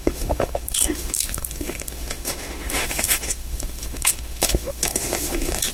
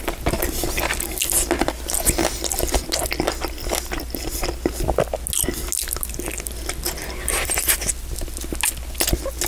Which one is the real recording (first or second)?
second